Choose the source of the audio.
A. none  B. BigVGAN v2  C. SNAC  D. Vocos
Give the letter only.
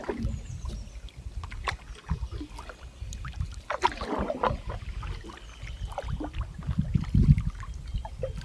A